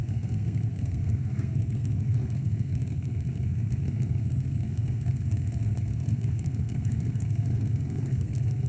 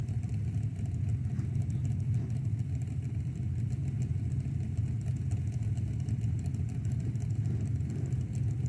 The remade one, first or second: first